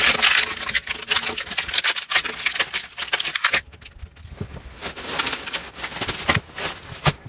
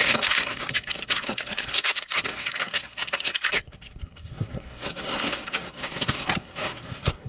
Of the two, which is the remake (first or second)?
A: second